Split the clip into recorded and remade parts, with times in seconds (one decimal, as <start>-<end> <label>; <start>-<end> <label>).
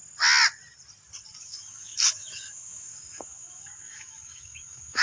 0.0-1.4 recorded; 1.4-5.0 remade